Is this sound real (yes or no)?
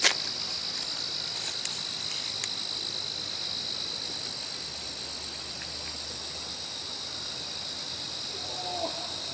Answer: yes